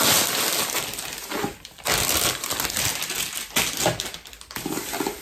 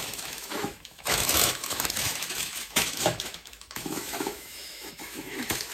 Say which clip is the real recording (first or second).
first